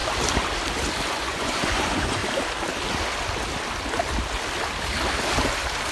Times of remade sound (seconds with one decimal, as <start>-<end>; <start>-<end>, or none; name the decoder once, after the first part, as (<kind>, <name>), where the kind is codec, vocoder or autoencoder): 1.1-2.2 (vocoder, Vocos)